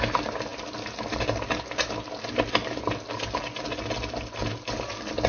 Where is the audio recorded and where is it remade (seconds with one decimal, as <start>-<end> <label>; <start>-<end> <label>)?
0.0-5.3 recorded